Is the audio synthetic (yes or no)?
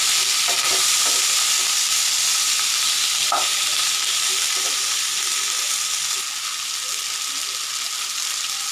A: no